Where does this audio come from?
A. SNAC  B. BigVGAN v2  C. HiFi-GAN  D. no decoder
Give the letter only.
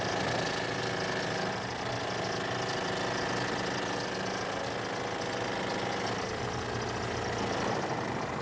D